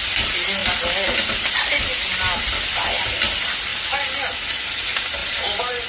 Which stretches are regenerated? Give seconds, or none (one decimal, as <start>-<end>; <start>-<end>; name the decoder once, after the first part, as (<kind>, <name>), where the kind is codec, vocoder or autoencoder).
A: 0.6-3.2 (vocoder, BigVGAN v2); 5.2-5.9